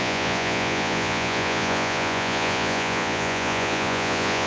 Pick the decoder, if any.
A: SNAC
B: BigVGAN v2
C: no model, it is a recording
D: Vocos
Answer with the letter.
D